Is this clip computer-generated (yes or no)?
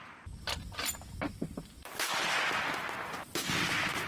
no